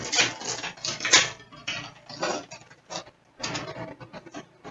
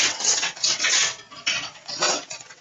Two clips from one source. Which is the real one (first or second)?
first